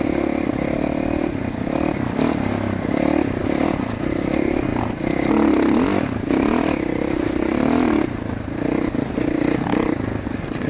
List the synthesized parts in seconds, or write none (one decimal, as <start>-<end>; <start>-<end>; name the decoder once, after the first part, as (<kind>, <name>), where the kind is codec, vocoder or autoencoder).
none